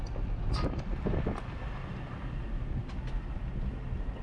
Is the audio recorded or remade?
recorded